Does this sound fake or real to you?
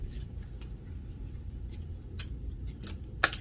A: fake